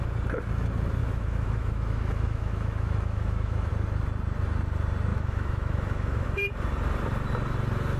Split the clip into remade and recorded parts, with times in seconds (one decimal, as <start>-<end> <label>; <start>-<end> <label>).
0.0-1.0 recorded; 1.0-3.7 remade; 3.7-5.1 recorded; 5.1-6.4 remade; 6.4-8.0 recorded